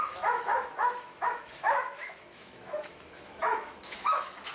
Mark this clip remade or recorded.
remade